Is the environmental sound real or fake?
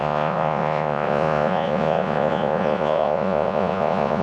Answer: fake